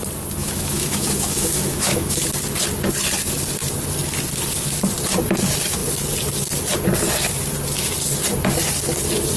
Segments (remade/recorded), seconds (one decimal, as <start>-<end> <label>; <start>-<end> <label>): 0.0-0.4 recorded; 0.4-2.3 remade; 2.3-9.4 recorded